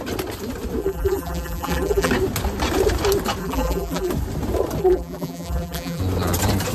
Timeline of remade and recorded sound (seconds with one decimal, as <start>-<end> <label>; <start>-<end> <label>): 0.0-0.8 recorded; 0.8-2.1 remade; 2.1-3.4 recorded; 3.4-4.1 remade; 4.1-4.8 recorded; 4.8-6.0 remade; 6.0-6.7 recorded